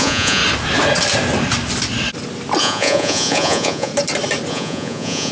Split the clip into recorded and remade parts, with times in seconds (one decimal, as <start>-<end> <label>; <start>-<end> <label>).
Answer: 0.0-0.4 remade; 0.4-2.6 recorded; 2.6-3.9 remade; 3.9-4.5 recorded; 4.5-5.3 remade